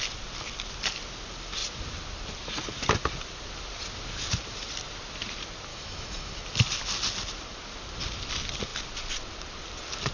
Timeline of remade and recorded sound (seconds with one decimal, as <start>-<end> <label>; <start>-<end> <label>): 0.0-5.7 recorded; 5.7-6.3 remade; 6.3-10.1 recorded